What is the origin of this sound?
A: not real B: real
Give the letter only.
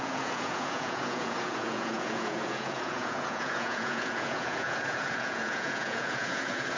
A